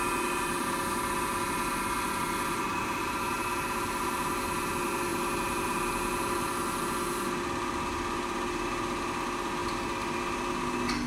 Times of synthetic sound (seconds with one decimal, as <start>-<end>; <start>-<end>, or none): none

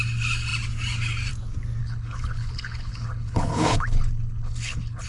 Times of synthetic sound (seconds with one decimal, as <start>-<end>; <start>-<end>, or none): 1.8-5.1

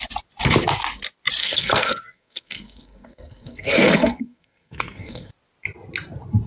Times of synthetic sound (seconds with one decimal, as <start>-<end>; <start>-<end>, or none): 1.4-5.3

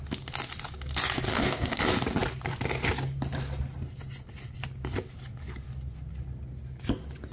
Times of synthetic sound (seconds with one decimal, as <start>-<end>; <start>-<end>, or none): 1.3-1.8

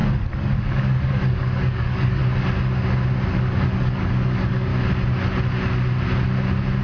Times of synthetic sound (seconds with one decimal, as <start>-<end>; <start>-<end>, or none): 0.0-2.2; 3.3-4.7

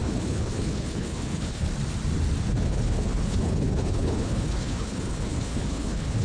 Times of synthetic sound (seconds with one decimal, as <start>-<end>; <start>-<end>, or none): 0.0-1.7; 2.5-6.2

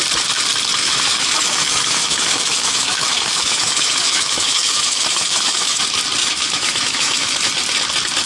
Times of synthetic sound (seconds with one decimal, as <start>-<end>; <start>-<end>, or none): 0.8-5.8; 6.2-7.5

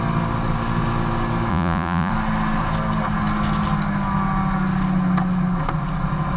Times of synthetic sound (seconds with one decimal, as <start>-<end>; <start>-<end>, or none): 1.5-2.1